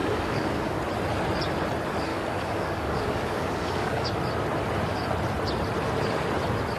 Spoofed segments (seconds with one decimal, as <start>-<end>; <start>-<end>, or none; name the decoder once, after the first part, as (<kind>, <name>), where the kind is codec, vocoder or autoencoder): 0.0-0.8 (codec, DAC); 2.1-4.1